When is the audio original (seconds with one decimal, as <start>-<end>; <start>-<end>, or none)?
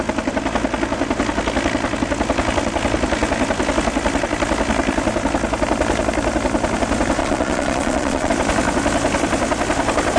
0.0-7.2; 8.3-10.2